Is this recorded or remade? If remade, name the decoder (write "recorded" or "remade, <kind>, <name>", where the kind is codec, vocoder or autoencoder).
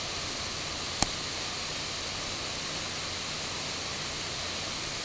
recorded